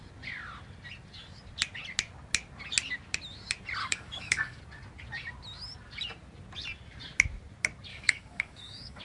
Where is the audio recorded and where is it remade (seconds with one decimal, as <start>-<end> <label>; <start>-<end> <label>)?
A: 0.0-3.8 recorded; 3.8-4.6 remade; 4.6-7.9 recorded; 7.9-9.0 remade

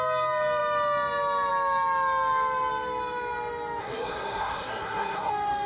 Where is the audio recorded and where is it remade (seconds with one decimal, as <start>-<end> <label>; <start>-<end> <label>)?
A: 0.0-3.8 recorded; 3.8-5.3 remade; 5.3-5.7 recorded

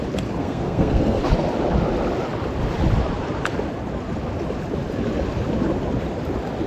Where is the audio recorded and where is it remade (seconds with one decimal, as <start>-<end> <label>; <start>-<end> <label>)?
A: 0.0-0.4 recorded; 0.4-1.2 remade; 1.2-6.7 recorded